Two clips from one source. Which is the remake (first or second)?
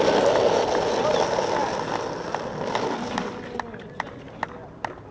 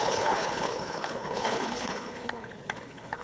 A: second